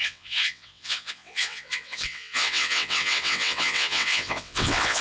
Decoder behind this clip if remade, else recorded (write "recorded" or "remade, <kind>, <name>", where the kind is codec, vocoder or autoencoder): remade, vocoder, WaveNeXt